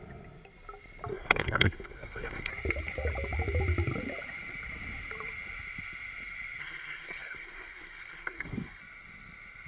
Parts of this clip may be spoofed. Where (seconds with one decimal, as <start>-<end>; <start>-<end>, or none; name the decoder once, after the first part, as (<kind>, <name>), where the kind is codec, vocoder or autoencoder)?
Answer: 1.1-2.5 (codec, SNAC); 6.6-8.8